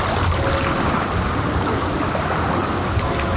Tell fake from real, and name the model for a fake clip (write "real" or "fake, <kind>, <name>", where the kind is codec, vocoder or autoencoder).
real